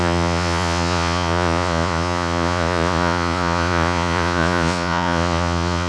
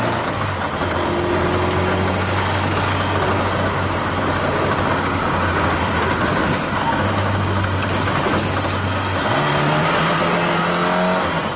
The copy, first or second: first